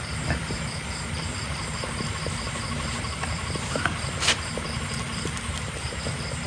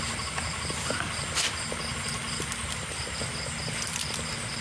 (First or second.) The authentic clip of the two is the second